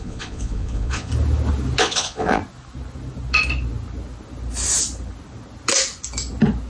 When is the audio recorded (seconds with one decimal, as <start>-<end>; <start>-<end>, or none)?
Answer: 1.1-1.8; 2.4-6.7